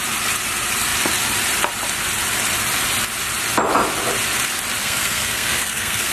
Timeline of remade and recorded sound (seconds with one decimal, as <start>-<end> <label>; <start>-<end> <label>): 0.0-4.8 recorded; 4.8-6.1 remade